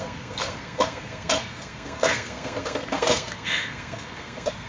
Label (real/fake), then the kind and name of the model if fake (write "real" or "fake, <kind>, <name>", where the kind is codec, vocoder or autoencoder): fake, codec, SNAC